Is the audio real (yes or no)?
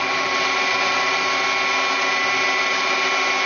yes